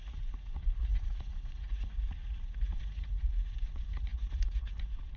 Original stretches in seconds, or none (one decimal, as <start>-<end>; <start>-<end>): none